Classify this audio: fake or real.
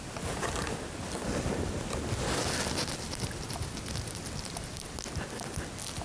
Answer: real